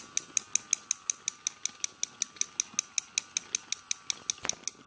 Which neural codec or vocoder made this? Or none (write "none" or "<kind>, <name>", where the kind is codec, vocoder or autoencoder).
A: none